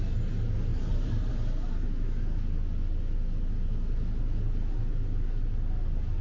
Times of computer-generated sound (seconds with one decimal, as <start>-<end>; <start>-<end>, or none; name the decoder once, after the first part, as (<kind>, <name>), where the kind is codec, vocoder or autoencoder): 0.7-1.3 (vocoder, BigVGAN v2)